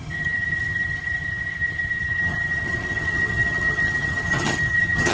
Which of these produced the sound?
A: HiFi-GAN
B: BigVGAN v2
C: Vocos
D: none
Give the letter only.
A